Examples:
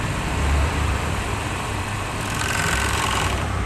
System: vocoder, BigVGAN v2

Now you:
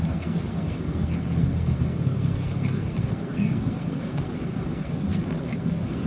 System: codec, SNAC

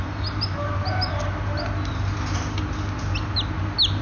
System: none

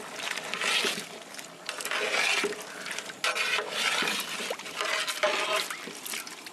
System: none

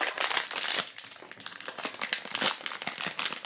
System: none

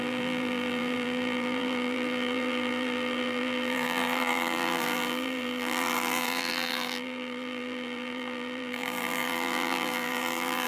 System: vocoder, BigVGAN v2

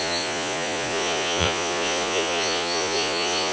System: vocoder, Vocos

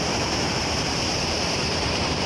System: vocoder, BigVGAN v2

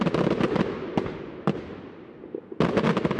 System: none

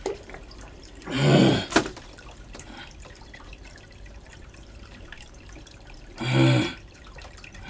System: vocoder, BigVGAN v2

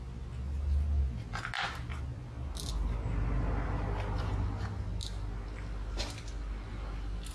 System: none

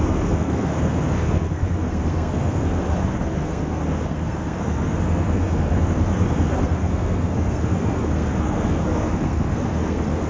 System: codec, SNAC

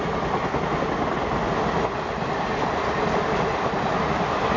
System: none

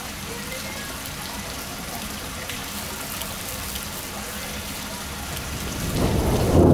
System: none